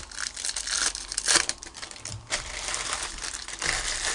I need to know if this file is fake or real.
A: real